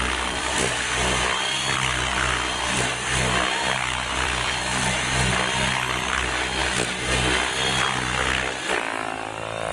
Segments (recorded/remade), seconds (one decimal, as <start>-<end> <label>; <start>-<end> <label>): 0.0-6.6 remade; 6.6-8.7 recorded; 8.7-9.7 remade